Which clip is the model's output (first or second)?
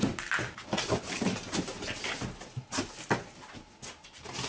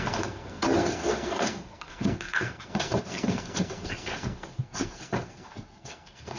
second